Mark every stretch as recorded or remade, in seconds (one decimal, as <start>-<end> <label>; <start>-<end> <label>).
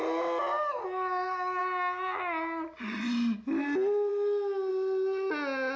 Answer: 0.0-5.8 recorded